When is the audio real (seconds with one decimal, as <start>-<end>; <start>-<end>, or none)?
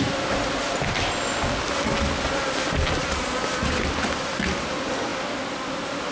0.0-6.1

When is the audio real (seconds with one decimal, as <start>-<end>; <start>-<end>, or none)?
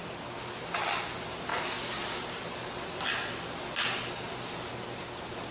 0.0-5.5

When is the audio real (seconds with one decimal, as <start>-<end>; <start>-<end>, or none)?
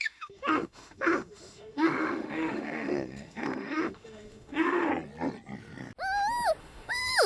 4.9-6.6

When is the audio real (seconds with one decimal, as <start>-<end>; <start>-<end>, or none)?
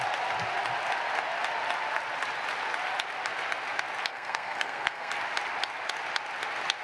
0.0-4.1; 5.1-6.8